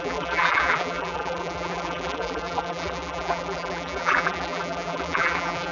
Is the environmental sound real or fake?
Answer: fake